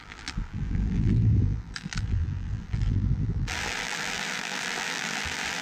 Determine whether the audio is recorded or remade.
remade